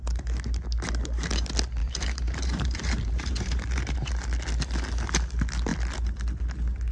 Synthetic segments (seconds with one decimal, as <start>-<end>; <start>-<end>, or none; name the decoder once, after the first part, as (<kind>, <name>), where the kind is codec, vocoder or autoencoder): 1.8-4.1 (vocoder, BigVGAN v2)